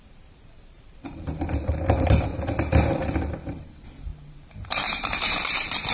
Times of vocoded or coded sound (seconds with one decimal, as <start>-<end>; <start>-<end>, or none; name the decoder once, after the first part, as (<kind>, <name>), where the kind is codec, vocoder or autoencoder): 0.0-2.3 (vocoder, BigVGAN v2); 3.0-5.9